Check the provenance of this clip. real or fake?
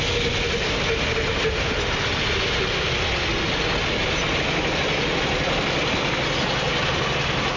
real